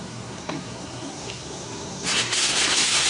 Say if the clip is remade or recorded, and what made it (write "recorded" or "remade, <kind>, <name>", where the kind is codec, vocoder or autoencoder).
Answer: remade, codec, SNAC